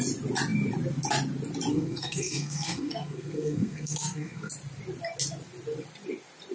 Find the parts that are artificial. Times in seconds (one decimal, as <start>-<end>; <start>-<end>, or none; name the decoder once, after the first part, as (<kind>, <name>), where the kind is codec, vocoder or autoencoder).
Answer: 1.7-4.5 (codec, SNAC)